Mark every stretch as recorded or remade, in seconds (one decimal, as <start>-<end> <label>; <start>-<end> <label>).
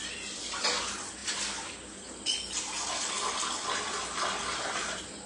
0.0-5.3 recorded